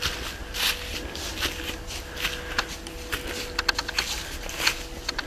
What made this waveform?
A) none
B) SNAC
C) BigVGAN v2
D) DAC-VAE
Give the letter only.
A